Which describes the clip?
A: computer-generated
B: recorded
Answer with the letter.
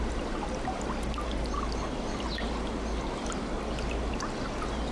B